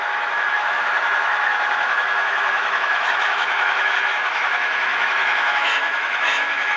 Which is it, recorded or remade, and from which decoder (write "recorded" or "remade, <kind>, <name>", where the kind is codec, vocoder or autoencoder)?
remade, autoencoder, DAC-VAE